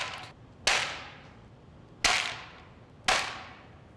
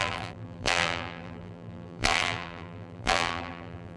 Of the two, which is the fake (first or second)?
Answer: second